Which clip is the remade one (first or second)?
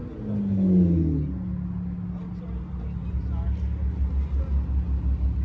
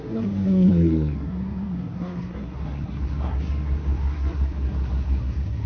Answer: second